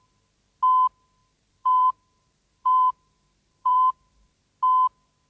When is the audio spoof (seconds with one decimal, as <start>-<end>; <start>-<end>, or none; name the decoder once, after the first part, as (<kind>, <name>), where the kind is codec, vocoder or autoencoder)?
1.2-4.4 (vocoder, BigVGAN v2)